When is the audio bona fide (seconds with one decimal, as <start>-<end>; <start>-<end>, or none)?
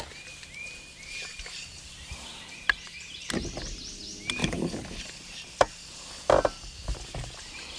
0.0-4.4; 5.0-7.8